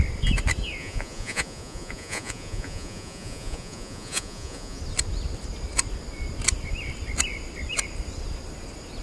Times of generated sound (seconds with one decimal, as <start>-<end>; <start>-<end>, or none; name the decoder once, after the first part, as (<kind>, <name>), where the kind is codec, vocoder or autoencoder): 0.8-4.8 (vocoder, Vocos)

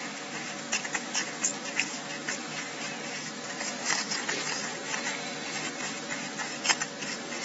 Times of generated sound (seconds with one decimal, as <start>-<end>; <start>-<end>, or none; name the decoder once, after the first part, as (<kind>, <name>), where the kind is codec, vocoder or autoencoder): none

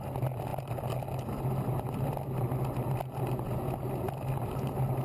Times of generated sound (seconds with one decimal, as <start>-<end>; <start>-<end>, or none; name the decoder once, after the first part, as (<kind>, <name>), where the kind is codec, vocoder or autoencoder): none